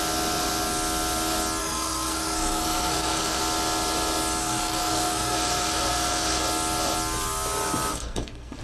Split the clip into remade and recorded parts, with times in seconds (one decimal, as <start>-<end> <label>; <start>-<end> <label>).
0.0-1.6 recorded; 1.6-3.4 remade; 3.4-4.4 recorded; 4.4-6.4 remade; 6.4-7.9 recorded; 7.9-8.6 remade